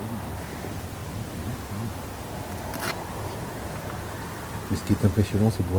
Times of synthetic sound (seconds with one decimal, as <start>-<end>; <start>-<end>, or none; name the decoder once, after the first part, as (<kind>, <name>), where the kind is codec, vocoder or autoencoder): 4.8-5.8 (vocoder, BigVGAN v2)